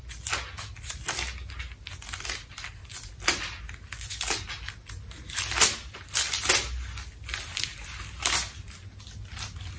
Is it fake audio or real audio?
real